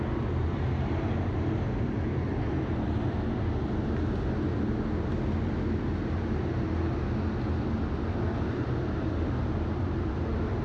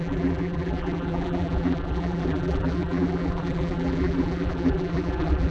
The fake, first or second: second